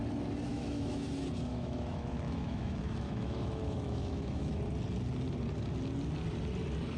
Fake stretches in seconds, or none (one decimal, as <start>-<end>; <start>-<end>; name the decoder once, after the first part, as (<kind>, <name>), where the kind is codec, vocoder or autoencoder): 0.5-1.1 (autoencoder, DAC-VAE); 1.5-4.6